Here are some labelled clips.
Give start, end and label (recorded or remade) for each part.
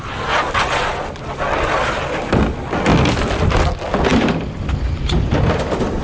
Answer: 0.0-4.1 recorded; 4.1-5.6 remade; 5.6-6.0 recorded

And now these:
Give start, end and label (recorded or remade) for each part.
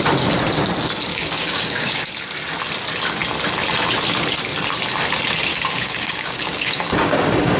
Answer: 0.0-1.1 recorded; 1.1-2.1 remade; 2.1-5.5 recorded; 5.5-7.6 remade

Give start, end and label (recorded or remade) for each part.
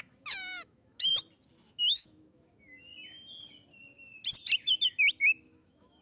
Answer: 0.0-1.1 remade; 1.1-1.7 recorded; 1.7-2.9 remade; 2.9-5.1 recorded; 5.1-6.0 remade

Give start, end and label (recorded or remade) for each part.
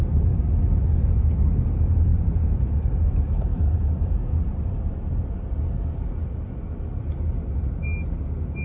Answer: 0.0-2.1 recorded; 2.1-2.7 remade; 2.7-3.5 recorded; 3.5-5.6 remade; 5.6-8.6 recorded